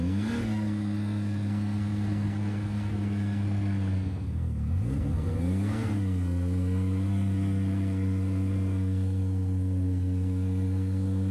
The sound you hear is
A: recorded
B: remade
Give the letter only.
B